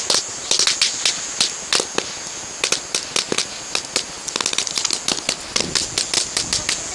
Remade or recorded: recorded